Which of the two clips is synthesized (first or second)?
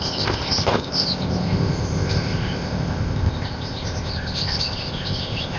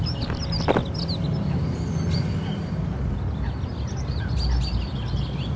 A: first